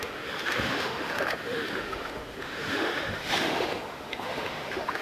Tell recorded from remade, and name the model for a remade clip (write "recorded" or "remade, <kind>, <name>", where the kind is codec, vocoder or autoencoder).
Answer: remade, autoencoder, DAC-VAE